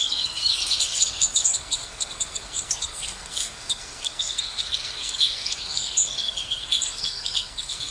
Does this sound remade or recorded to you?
remade